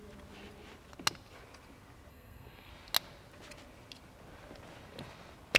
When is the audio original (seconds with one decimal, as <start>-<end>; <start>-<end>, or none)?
0.0-2.1; 2.7-5.6